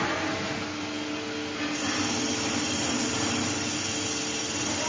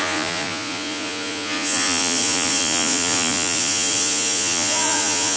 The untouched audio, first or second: first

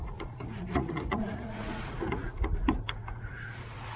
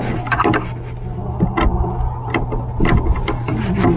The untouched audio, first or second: second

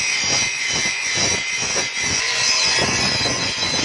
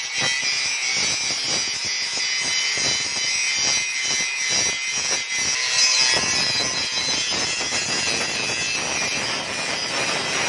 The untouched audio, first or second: second